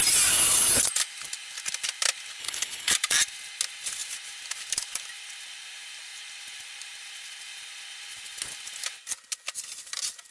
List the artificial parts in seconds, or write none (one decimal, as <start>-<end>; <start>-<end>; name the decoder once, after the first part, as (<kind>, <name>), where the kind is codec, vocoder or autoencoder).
2.4-2.9 (codec, HILCodec)